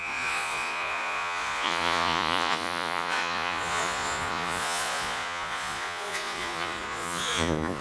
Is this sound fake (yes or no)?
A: yes